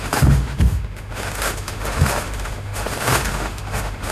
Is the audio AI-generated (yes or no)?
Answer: yes